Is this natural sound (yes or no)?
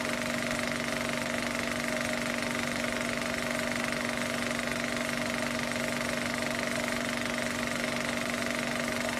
yes